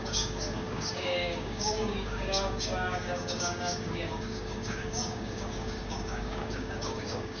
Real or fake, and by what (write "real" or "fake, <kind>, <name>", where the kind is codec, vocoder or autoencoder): fake, codec, DAC